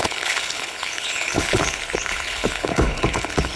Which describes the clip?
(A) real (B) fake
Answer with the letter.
B